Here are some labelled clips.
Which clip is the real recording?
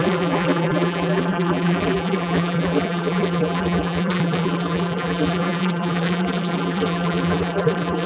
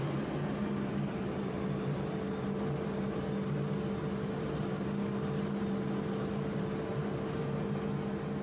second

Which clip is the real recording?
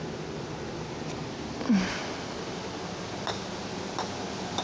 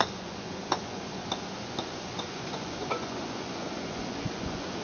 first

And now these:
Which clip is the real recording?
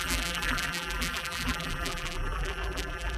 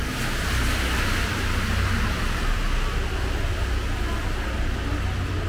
second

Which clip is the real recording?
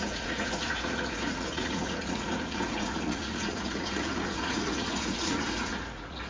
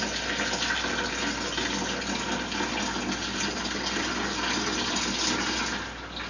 second